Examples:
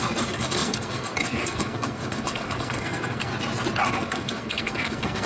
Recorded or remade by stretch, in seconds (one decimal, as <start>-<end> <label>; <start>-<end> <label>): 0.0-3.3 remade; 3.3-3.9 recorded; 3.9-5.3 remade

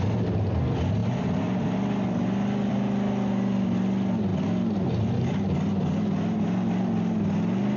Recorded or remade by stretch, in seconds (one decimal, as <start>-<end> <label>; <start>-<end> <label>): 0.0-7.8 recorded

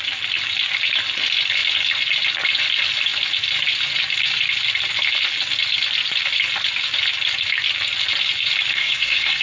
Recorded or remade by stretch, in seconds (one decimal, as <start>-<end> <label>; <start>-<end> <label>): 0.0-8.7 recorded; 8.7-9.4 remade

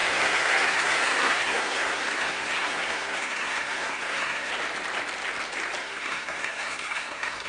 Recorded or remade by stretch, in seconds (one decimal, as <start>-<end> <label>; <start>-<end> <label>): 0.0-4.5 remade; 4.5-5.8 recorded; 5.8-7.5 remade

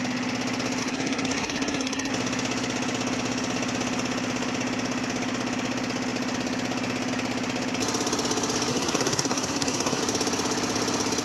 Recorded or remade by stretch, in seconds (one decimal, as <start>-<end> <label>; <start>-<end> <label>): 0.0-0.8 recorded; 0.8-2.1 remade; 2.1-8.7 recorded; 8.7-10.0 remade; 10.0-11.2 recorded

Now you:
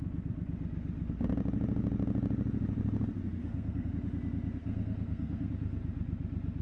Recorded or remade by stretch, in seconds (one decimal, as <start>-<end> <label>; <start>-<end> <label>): 0.0-3.4 recorded; 3.4-3.9 remade; 3.9-4.6 recorded; 4.6-5.5 remade; 5.5-6.6 recorded